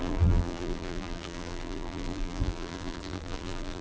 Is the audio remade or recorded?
remade